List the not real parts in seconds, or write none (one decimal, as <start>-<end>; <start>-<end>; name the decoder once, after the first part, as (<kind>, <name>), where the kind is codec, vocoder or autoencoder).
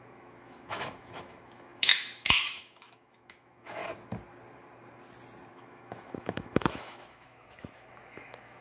0.0-3.8 (autoencoder, DAC-VAE); 5.5-8.6